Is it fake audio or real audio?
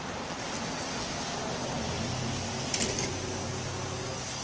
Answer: real